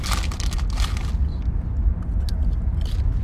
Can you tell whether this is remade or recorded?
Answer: recorded